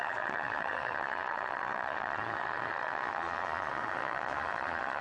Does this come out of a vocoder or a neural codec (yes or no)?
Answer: yes